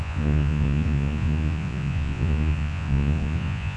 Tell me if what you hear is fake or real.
fake